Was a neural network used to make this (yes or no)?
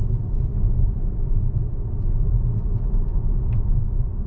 no